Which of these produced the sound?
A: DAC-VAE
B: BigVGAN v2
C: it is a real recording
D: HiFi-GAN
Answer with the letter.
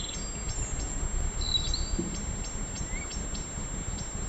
C